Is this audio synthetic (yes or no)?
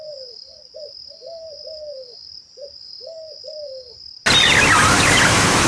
no